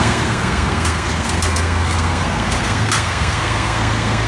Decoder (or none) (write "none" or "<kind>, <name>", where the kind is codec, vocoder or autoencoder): codec, SNAC